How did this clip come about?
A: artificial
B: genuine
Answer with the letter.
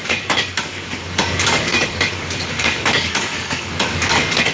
A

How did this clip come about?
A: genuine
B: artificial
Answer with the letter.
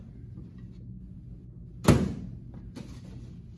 A